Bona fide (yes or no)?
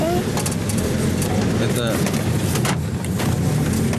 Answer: yes